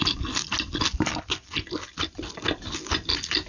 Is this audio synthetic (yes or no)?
no